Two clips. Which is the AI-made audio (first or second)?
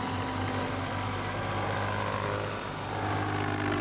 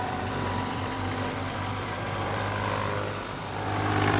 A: second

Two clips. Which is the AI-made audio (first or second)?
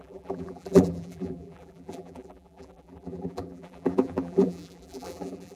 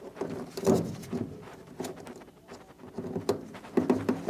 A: first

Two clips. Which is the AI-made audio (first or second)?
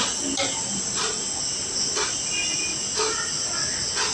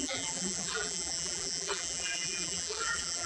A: second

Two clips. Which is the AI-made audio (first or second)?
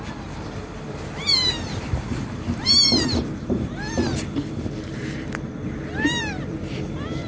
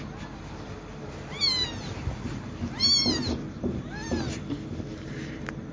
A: first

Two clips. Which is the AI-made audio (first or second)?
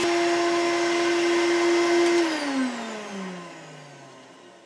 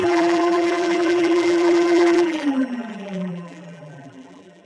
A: second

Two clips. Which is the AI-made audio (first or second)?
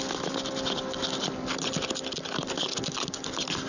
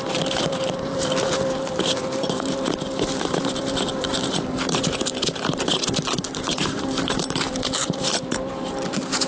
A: second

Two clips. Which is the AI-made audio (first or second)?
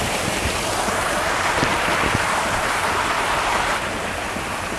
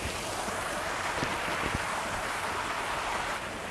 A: first